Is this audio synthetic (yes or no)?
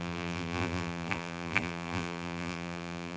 yes